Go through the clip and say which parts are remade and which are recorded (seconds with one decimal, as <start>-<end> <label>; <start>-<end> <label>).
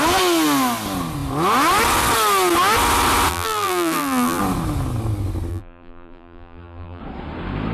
0.0-3.3 recorded; 3.3-4.4 remade; 4.4-5.5 recorded; 5.5-7.0 remade; 7.0-7.7 recorded